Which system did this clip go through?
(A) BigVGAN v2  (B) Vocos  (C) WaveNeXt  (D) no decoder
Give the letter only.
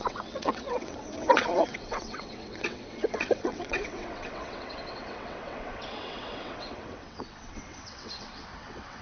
C